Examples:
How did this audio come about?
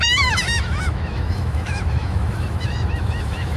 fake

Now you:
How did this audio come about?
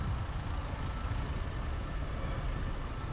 real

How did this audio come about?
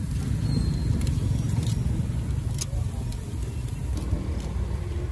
real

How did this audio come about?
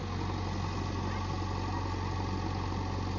real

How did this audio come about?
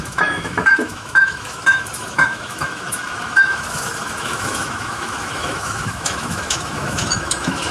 fake